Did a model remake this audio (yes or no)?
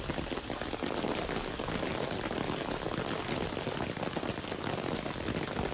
no